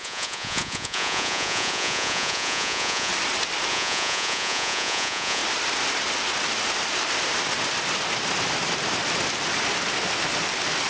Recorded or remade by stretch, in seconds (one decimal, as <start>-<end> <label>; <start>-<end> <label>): 0.0-3.1 remade; 3.1-3.7 recorded; 3.7-5.4 remade; 5.4-10.9 recorded